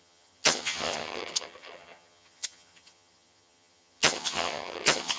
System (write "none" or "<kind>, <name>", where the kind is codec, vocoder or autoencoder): vocoder, HiFi-GAN